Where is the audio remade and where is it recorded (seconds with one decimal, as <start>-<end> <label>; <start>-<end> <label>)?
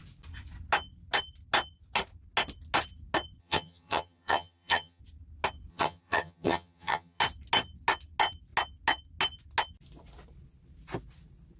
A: 0.0-3.4 recorded; 3.4-5.0 remade; 5.0-5.7 recorded; 5.7-7.2 remade; 7.2-11.6 recorded